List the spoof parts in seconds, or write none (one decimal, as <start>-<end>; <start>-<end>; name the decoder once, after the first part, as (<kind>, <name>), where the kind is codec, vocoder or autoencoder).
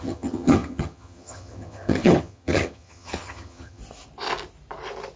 0.0-3.8 (vocoder, HiFi-GAN)